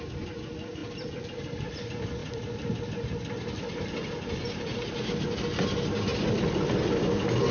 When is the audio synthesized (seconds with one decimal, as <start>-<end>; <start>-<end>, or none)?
none